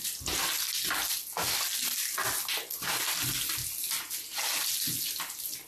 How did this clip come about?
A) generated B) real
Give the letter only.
B